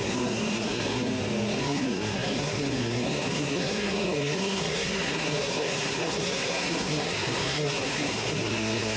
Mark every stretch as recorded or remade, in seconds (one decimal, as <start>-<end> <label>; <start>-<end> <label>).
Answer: 0.0-1.1 remade; 1.1-1.6 recorded; 1.6-9.0 remade